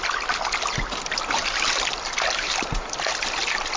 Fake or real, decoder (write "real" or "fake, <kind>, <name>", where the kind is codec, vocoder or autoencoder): real